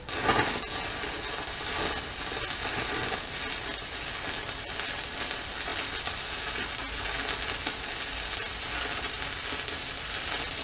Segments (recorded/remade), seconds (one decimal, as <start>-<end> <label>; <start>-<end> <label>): 0.0-10.6 recorded